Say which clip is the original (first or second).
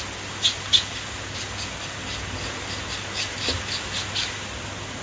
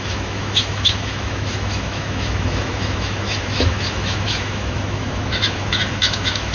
first